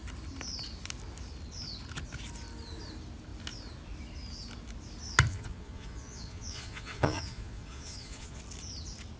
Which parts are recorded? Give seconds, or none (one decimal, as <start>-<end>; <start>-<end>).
0.0-5.3; 8.4-9.2